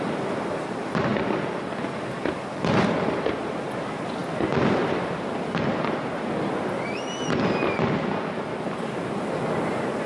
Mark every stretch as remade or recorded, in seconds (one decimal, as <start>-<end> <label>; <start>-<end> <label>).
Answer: 0.0-10.1 recorded